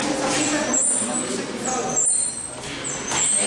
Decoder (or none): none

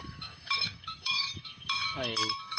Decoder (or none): codec, DAC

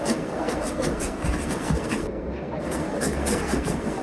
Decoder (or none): codec, SNAC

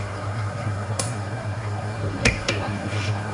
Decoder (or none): codec, SNAC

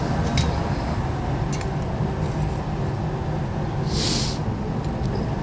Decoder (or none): none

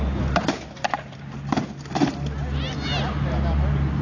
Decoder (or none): none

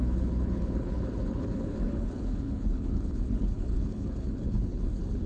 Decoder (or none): codec, HILCodec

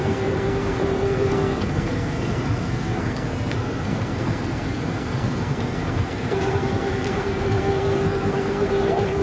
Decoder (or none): codec, SNAC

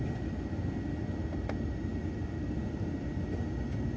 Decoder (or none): none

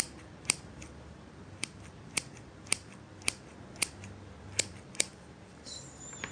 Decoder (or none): vocoder, BigVGAN v2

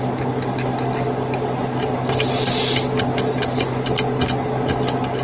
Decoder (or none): none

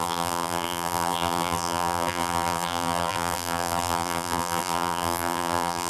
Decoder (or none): vocoder, BigVGAN v2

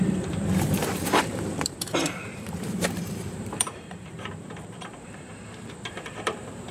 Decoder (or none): vocoder, BigVGAN v2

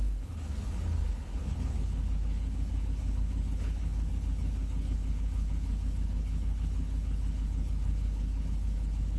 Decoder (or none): codec, HILCodec